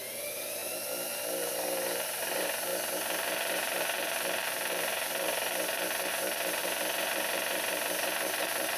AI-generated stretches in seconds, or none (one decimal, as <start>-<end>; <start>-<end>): 0.0-8.8